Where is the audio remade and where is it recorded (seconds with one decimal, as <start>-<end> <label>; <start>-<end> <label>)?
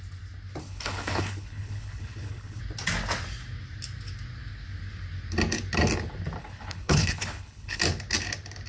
0.0-0.6 recorded; 0.6-2.6 remade; 2.6-6.4 recorded; 6.4-7.8 remade; 7.8-8.7 recorded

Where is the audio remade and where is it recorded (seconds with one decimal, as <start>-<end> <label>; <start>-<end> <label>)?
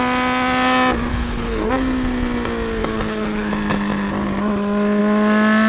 0.0-1.1 recorded; 1.1-1.7 remade; 1.7-2.8 recorded; 2.8-3.5 remade; 3.5-5.7 recorded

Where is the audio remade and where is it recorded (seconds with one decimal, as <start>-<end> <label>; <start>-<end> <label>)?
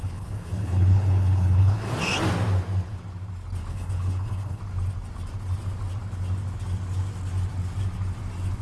0.0-1.9 remade; 1.9-3.7 recorded; 3.7-4.6 remade; 4.6-8.6 recorded